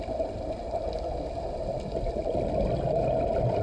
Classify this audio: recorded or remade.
recorded